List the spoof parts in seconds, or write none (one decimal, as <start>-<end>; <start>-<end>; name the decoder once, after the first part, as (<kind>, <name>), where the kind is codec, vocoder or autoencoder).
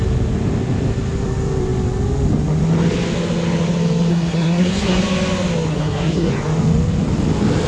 4.1-5.0 (codec, SNAC); 5.7-6.3